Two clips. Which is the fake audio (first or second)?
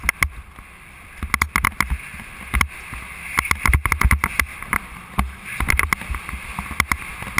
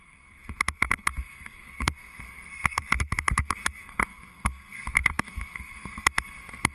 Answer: second